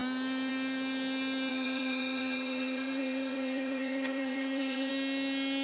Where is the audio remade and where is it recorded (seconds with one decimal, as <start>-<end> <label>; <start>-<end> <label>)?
0.0-1.5 recorded; 1.5-4.9 remade; 4.9-5.6 recorded